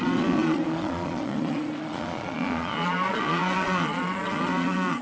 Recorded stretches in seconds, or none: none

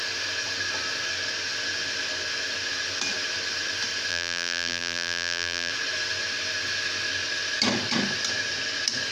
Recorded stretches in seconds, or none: 0.0-4.1; 5.7-9.1

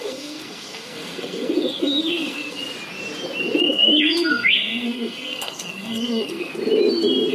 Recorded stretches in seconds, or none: 2.6-3.6; 6.5-7.3

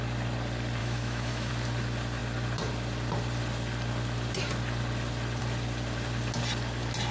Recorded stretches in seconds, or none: 0.0-0.8; 1.5-7.1

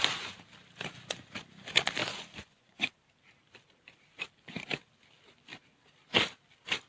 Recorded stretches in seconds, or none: 0.0-2.0; 2.9-6.9

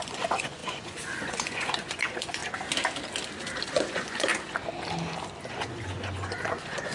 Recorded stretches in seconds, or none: 2.4-3.7; 4.3-5.5

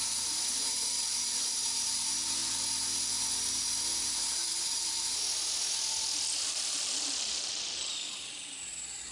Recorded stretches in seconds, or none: 2.4-4.0; 4.5-6.4

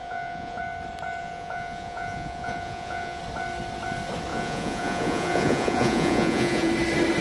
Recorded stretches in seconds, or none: 0.6-1.2; 3.2-4.3; 6.7-7.2